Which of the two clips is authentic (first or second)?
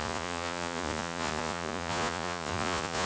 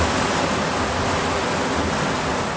second